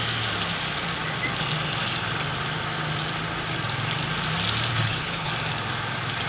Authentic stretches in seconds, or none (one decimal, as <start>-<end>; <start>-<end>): 0.0-4.7; 5.3-6.3